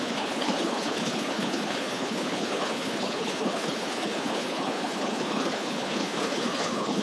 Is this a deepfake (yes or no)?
yes